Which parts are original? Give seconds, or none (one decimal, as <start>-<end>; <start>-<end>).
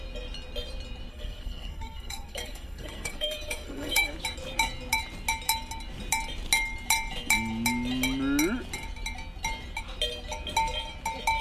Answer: 0.0-1.1; 4.1-11.4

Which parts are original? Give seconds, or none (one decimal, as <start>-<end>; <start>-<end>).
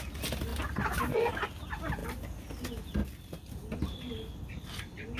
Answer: 0.0-5.2